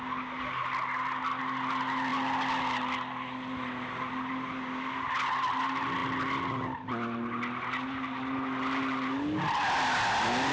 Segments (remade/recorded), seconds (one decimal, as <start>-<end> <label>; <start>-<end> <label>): 0.0-10.5 recorded